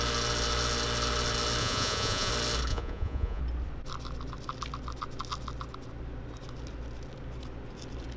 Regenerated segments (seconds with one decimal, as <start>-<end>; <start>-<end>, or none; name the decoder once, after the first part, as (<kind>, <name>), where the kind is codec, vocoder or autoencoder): 1.6-2.3 (vocoder, Vocos); 2.7-3.4